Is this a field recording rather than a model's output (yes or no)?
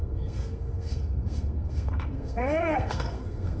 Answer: no